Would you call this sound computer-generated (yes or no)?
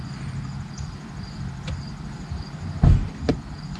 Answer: no